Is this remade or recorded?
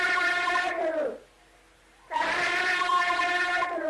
recorded